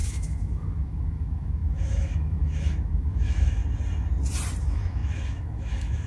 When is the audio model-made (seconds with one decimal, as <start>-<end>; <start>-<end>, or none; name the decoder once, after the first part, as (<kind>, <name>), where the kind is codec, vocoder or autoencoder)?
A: 0.0-3.6 (autoencoder, DAC-VAE); 4.6-6.1